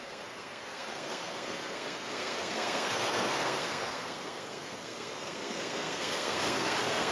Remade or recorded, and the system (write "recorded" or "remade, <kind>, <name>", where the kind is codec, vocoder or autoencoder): remade, codec, SNAC